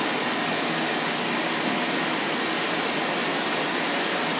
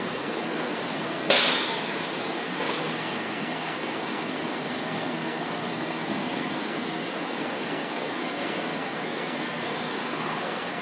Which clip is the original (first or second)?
first